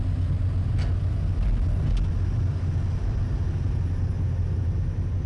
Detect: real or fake real